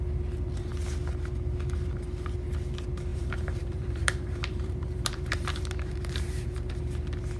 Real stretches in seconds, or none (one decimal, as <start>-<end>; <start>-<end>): 0.0-3.1; 6.7-7.4